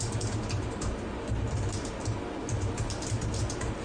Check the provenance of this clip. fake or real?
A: fake